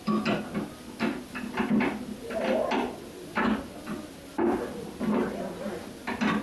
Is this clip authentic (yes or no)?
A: yes